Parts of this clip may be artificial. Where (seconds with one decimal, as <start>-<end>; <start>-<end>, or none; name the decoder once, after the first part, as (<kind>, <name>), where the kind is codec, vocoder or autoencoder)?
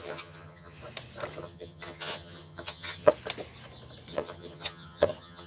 0.0-0.8 (vocoder, HiFi-GAN); 1.3-3.1; 4.1-5.5